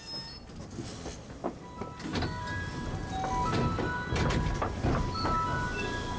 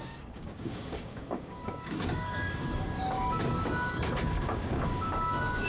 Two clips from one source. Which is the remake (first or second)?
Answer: second